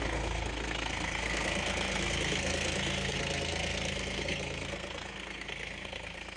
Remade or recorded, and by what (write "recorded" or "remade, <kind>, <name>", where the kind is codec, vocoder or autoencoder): remade, codec, SNAC